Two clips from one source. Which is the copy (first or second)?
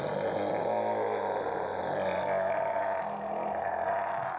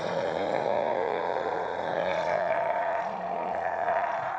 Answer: second